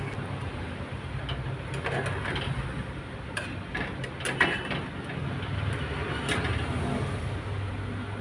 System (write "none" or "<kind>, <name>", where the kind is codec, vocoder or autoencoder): none